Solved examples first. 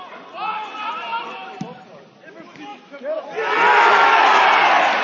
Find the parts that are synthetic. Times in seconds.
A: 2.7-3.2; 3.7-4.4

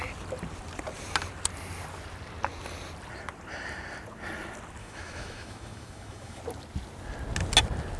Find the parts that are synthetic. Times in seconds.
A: 4.8-6.4